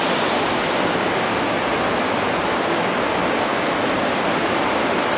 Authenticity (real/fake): real